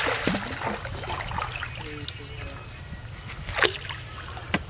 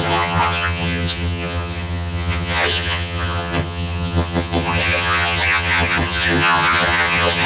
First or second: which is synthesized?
second